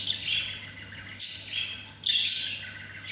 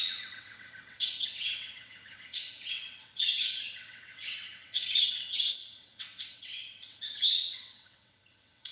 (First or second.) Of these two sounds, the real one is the first